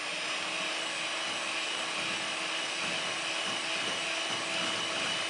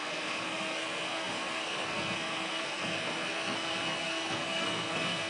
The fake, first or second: second